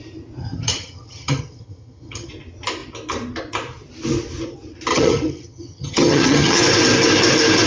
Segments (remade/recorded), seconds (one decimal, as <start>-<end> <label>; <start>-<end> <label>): 0.0-0.4 recorded; 0.4-2.3 remade; 2.3-4.9 recorded; 4.9-6.6 remade; 6.6-7.7 recorded